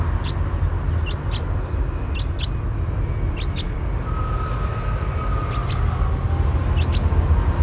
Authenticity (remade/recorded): recorded